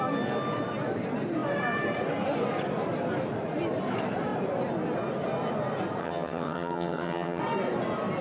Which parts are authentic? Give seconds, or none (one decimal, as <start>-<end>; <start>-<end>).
0.0-6.0; 7.4-8.2